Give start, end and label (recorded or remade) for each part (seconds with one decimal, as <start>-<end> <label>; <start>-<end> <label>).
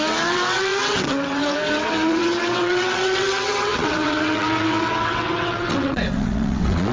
0.0-6.9 remade